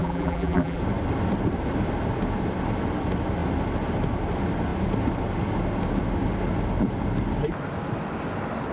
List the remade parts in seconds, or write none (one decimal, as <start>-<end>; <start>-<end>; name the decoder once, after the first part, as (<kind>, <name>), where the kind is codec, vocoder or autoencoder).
0.0-0.8 (vocoder, BigVGAN v2)